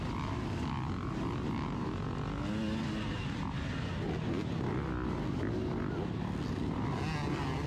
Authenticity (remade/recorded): recorded